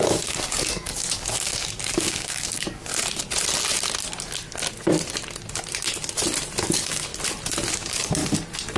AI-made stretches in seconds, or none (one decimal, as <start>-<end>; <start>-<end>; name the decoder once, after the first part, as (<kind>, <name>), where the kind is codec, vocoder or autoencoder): 0.0-2.9 (codec, DAC); 6.6-7.1; 7.7-8.2